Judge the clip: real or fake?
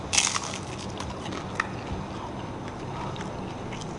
real